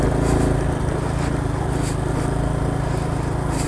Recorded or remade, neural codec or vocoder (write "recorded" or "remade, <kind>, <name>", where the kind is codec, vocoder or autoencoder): recorded